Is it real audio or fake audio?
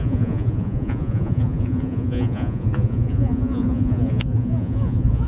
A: fake